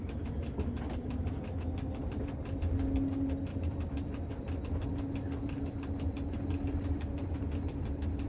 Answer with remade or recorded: recorded